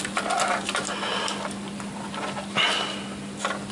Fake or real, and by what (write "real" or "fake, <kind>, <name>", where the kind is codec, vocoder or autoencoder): fake, vocoder, BigVGAN v2